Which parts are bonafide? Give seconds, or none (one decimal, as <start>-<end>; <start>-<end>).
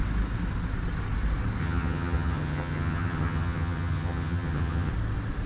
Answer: 0.0-1.6; 4.9-5.5